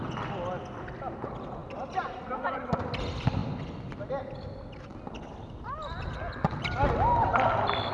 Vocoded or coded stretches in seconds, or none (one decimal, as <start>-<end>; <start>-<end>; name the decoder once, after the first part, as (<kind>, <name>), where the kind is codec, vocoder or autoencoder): none

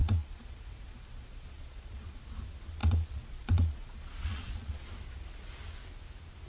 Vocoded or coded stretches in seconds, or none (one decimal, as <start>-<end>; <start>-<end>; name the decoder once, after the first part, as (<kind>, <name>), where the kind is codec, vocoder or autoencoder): 0.0-2.2 (vocoder, Vocos); 2.8-4.9

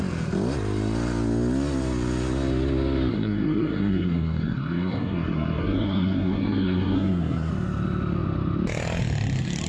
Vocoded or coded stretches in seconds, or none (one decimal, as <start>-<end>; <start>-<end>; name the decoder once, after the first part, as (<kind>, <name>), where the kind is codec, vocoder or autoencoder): 3.1-7.5 (codec, SNAC)